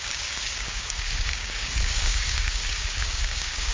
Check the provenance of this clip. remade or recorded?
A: remade